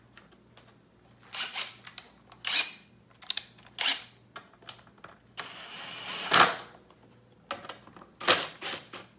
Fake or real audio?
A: real